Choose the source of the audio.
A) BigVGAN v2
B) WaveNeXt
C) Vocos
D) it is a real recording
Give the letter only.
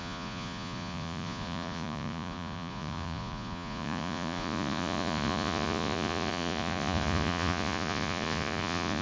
C